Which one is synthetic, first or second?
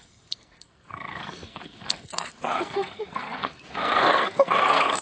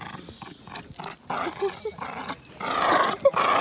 first